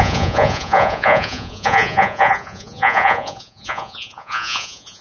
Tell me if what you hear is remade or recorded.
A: remade